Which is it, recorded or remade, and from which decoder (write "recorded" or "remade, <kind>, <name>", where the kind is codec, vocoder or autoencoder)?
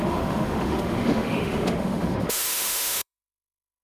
remade, autoencoder, DAC-VAE